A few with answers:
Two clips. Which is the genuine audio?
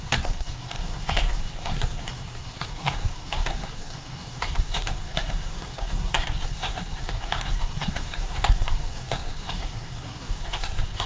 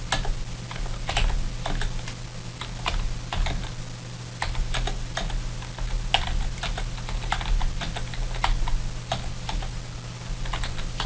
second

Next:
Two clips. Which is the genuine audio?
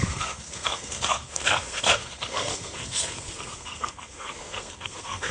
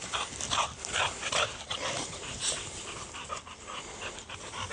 second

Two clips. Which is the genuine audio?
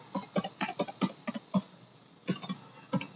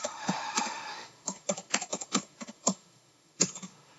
first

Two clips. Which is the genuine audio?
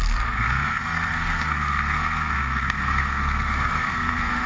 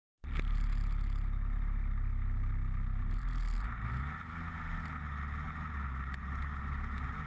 second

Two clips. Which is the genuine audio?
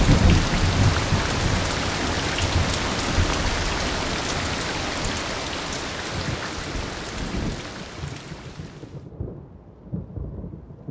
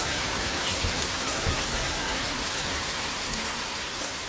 first